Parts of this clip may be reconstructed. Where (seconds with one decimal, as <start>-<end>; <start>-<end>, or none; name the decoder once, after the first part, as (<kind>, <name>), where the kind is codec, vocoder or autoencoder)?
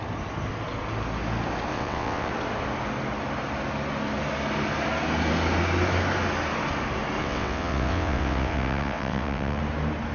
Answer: 1.7-2.3 (vocoder, WaveNeXt); 7.2-9.6